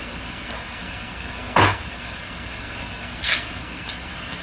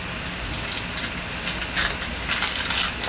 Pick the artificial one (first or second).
first